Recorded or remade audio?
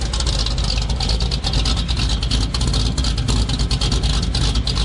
recorded